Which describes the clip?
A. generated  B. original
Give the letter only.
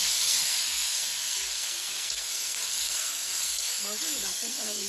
A